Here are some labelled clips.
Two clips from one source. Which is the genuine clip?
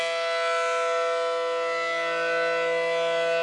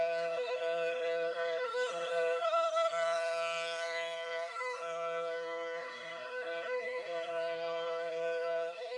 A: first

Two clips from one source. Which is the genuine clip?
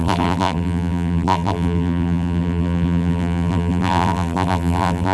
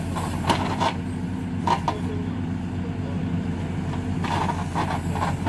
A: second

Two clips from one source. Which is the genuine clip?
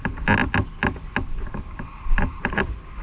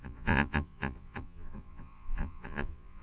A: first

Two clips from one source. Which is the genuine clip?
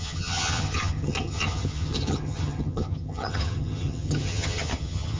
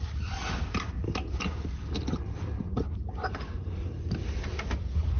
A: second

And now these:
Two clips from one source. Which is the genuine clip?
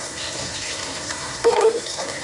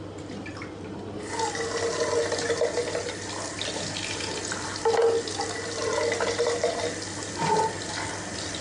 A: second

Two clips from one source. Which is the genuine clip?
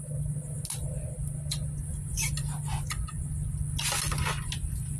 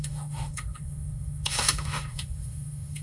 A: first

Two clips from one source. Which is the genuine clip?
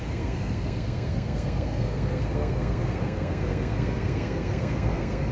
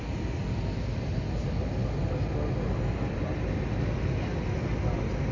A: second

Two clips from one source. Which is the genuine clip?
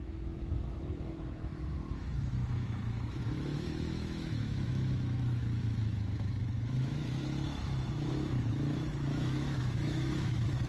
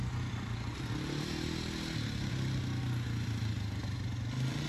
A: second